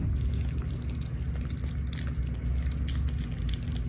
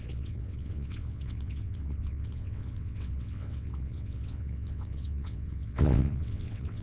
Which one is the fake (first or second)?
second